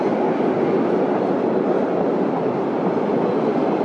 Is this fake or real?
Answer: real